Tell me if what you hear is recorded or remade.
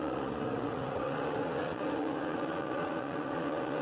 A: remade